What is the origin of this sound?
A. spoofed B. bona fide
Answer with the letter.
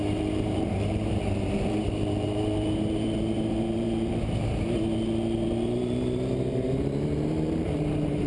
A